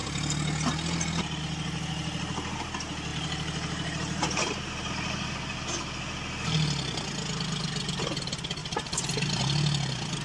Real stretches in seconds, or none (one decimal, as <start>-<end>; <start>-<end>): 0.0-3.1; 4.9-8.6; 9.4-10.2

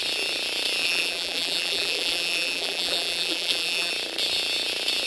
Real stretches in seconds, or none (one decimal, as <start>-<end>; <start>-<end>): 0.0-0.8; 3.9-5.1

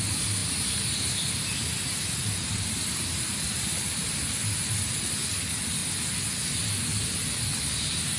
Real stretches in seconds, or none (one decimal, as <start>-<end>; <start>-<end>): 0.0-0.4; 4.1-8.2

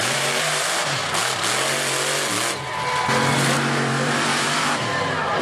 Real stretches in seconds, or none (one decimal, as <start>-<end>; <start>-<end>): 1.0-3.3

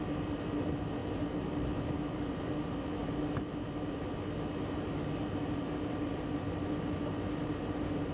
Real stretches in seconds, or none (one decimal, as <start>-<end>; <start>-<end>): 0.0-8.1